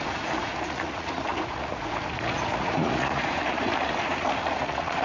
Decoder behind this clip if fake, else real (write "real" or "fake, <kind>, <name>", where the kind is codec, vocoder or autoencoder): fake, vocoder, Vocos